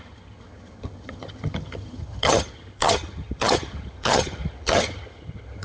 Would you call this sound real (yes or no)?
no